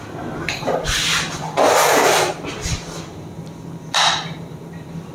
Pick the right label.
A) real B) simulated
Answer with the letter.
A